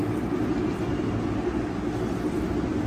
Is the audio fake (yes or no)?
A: no